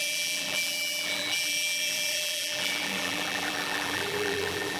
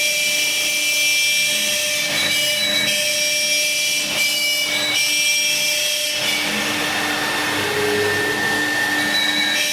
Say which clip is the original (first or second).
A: second